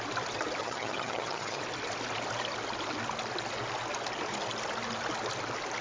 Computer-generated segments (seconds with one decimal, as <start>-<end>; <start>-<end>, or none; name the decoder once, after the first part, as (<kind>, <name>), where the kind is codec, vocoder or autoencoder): 0.6-1.6 (vocoder, HiFi-GAN)